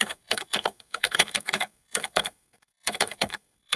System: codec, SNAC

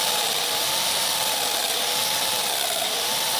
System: vocoder, BigVGAN v2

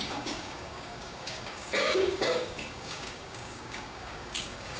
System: codec, DAC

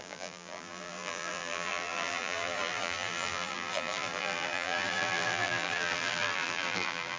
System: vocoder, BigVGAN v2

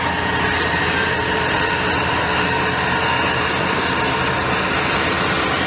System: none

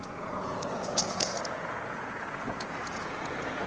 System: vocoder, Vocos